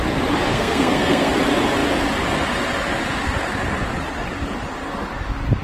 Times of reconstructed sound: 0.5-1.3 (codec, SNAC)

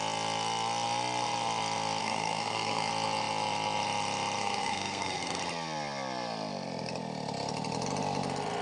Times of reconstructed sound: 2.0-2.9 (codec, SNAC); 4.4-5.4